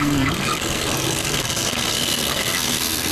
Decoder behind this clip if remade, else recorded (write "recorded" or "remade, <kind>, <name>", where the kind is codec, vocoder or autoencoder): remade, codec, SNAC